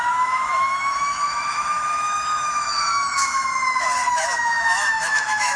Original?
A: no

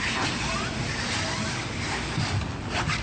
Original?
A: yes